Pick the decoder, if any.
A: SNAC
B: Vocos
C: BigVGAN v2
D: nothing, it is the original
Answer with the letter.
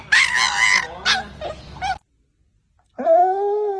D